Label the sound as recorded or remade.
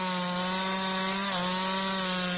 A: recorded